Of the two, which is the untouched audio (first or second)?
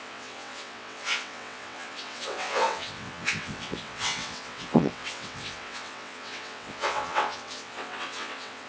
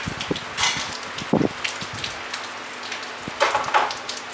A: second